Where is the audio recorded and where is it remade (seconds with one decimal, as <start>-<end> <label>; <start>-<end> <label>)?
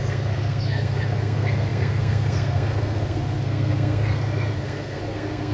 0.0-5.5 remade